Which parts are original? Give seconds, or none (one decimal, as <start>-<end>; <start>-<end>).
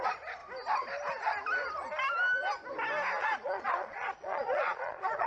0.4-3.2